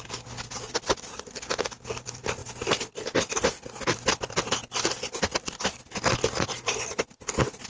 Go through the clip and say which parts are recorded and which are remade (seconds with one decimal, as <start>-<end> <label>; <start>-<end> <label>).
0.0-7.7 recorded